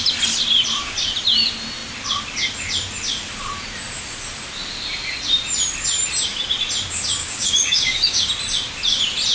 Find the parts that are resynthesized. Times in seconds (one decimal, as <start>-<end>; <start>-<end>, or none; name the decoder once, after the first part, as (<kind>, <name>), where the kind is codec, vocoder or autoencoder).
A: 7.2-8.3 (codec, DAC)